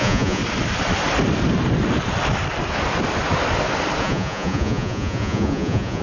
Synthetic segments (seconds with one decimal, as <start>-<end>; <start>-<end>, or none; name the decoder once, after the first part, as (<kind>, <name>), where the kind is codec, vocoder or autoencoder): 0.0-0.4 (vocoder, Vocos); 4.0-6.0

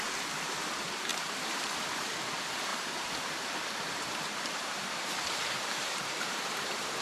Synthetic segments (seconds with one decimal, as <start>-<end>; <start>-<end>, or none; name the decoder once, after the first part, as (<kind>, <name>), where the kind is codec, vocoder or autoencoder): 1.1-1.6 (vocoder, BigVGAN v2); 2.7-7.0